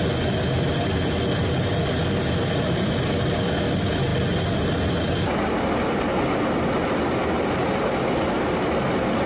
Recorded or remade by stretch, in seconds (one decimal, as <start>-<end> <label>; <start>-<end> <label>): 0.0-9.3 recorded